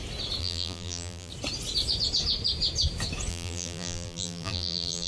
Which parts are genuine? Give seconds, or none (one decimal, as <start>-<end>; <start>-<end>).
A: 0.0-0.4; 1.3-3.3